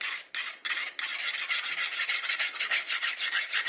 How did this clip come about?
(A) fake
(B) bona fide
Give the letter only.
B